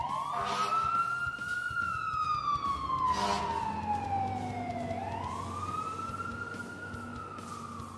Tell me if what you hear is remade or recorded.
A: recorded